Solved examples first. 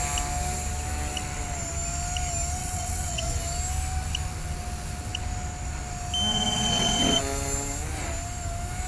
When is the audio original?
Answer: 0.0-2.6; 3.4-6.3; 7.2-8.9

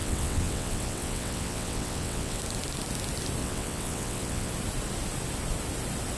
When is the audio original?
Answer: 2.4-3.4; 4.5-6.2

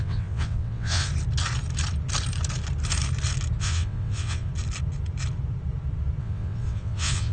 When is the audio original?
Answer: 1.1-3.6; 4.5-6.2

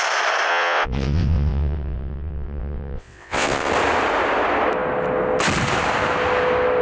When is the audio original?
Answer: 0.0-0.5; 3.7-6.8

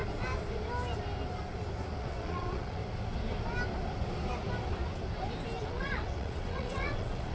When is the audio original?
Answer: 0.0-2.0; 2.8-5.6